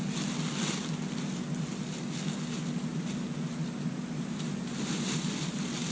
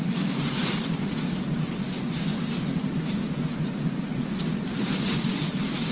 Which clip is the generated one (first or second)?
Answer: second